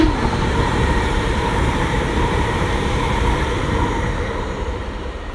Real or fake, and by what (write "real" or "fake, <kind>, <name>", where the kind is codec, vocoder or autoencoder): fake, vocoder, BigVGAN v2